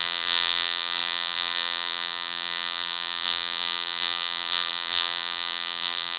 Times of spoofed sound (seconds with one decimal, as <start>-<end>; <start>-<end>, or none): 0.0-6.2